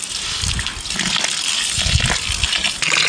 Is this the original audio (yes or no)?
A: yes